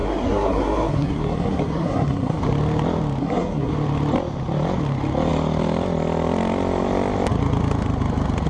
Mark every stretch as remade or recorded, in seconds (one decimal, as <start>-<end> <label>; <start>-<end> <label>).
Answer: 0.0-2.4 remade; 2.4-3.2 recorded; 3.2-3.7 remade; 3.7-8.5 recorded